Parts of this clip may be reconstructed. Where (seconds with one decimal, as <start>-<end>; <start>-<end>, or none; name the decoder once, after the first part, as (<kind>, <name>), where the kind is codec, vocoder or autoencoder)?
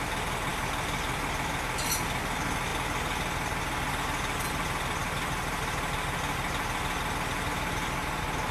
none